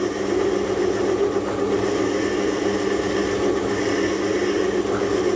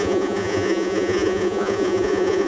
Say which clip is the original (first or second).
first